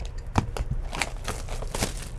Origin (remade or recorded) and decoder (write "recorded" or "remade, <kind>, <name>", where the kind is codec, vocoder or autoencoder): recorded